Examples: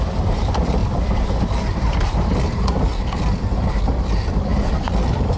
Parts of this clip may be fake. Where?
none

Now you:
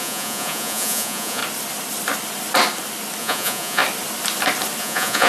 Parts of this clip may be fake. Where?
0.0-1.4 (vocoder, Vocos); 3.2-3.8; 4.8-5.3

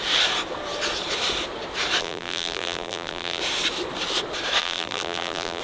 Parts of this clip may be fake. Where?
2.0-3.4 (vocoder, BigVGAN v2); 4.6-5.6

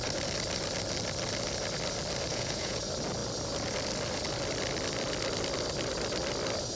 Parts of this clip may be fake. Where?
2.3-2.8 (vocoder, Vocos)

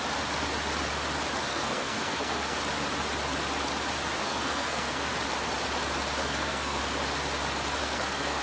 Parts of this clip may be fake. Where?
1.5-2.6 (codec, SNAC); 4.2-5.1; 6.2-6.8; 7.8-8.4

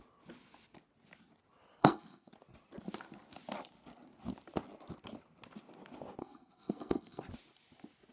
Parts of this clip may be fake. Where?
1.8-2.3 (codec, SNAC); 6.2-7.2